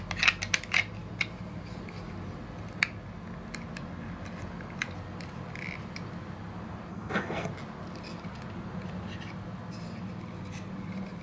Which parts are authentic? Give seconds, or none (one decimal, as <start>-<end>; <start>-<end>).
0.0-6.9; 7.5-11.2